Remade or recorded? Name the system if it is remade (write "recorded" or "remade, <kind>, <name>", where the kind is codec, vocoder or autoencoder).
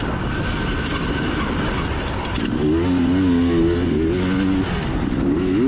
recorded